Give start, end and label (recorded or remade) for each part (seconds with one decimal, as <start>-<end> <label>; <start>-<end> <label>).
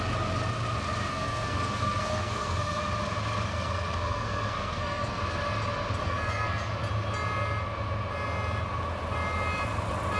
0.0-1.1 recorded; 1.1-2.8 remade; 2.8-3.5 recorded; 3.5-5.2 remade; 5.2-6.0 recorded; 6.0-6.7 remade; 6.7-10.2 recorded